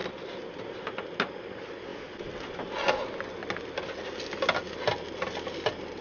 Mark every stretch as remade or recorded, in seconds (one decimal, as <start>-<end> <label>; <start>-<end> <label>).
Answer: 0.0-6.0 recorded